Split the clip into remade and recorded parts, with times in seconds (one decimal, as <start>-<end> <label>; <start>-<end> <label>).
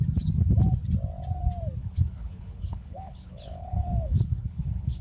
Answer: 0.0-1.8 recorded; 1.8-5.0 remade